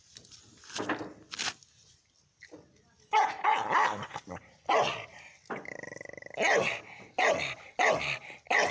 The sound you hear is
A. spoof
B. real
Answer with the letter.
B